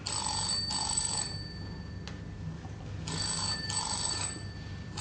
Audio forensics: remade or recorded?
recorded